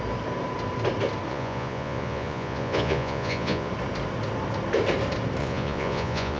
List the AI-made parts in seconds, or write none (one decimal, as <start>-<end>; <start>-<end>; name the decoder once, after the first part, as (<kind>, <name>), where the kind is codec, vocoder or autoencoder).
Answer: 1.3-3.7 (vocoder, Vocos); 5.4-6.4